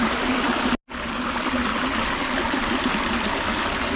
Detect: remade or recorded recorded